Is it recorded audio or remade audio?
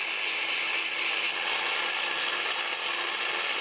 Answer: recorded